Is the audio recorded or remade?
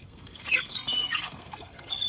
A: remade